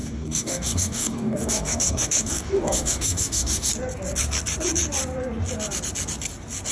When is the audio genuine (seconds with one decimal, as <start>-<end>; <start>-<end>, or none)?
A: 3.7-6.7